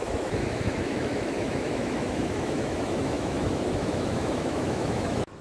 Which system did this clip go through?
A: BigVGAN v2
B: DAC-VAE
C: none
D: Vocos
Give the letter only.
B